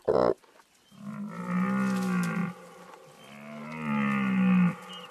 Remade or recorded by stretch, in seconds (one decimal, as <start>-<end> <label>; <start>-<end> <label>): 0.0-5.1 recorded